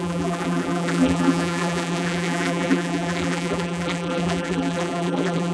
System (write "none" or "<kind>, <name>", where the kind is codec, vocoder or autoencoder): vocoder, BigVGAN v2